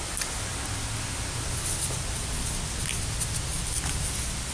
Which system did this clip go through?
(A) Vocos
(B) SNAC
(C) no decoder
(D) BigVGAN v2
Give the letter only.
C